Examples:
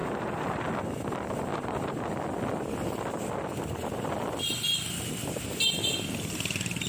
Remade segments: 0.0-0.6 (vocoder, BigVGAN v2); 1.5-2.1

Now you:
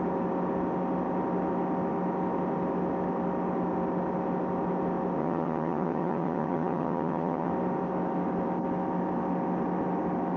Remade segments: 5.2-7.5 (vocoder, HiFi-GAN)

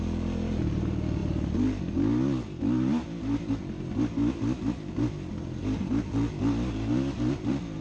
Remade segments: none

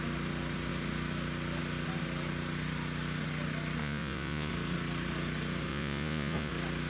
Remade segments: 3.8-4.5 (vocoder, Vocos); 5.7-6.5

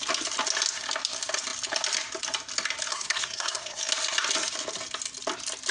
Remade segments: 2.9-3.8 (codec, SNAC)

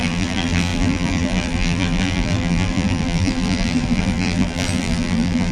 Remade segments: 0.0-5.5 (vocoder, BigVGAN v2)

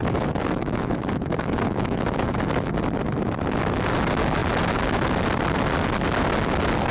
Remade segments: 0.0-2.7 (autoencoder, DAC-VAE)

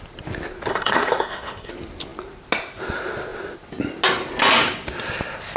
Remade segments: 0.7-1.7 (codec, SNAC)